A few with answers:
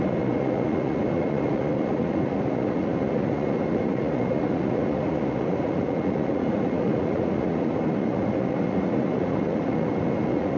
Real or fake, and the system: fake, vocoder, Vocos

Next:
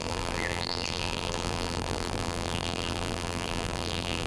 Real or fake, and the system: fake, vocoder, BigVGAN v2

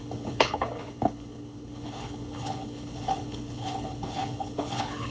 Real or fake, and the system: fake, codec, HILCodec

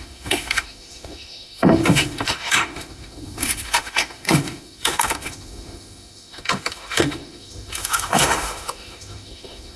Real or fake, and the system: fake, autoencoder, DAC-VAE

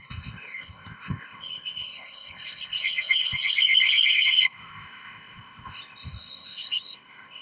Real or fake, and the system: fake, codec, ZipCodec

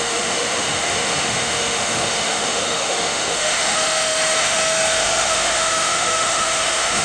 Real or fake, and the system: fake, autoencoder, DAC-VAE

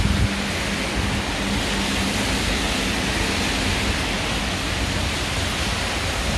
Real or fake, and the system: real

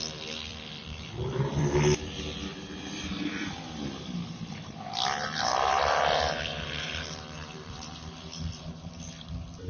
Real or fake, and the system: fake, vocoder, BigVGAN v2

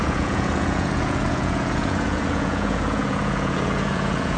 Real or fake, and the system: fake, vocoder, Vocos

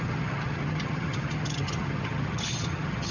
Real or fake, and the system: fake, vocoder, HiFi-GAN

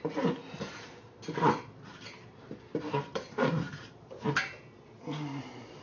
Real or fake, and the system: fake, vocoder, BigVGAN v2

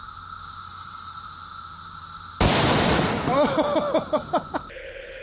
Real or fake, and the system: real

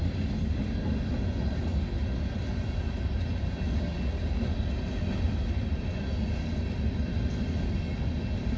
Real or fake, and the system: real